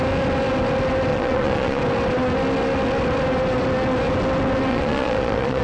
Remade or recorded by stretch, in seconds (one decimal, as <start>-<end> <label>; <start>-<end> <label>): 0.0-1.1 recorded; 1.1-1.8 remade; 1.8-4.7 recorded; 4.7-5.6 remade

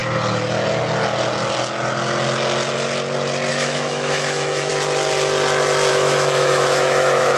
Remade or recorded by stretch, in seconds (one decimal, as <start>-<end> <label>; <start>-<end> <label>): 0.0-3.5 recorded; 3.5-4.7 remade; 4.7-5.9 recorded; 5.9-7.4 remade